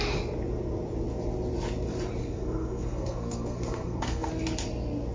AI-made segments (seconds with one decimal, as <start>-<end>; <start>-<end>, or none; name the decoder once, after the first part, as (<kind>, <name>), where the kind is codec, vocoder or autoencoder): 2.2-4.3 (codec, SNAC)